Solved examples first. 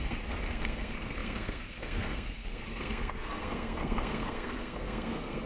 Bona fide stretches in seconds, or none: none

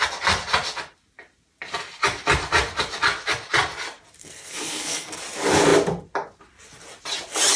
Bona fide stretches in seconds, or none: 0.0-4.2; 5.2-7.6

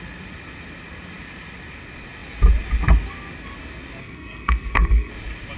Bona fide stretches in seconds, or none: 0.0-4.0; 5.1-5.6

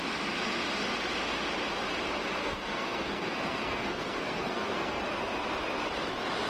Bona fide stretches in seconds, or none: 0.0-2.4; 5.0-6.5

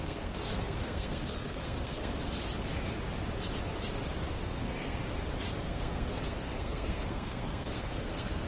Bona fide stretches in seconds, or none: 2.1-4.3; 5.0-5.6

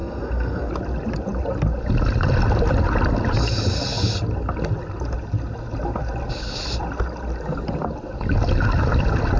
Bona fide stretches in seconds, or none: 0.7-9.4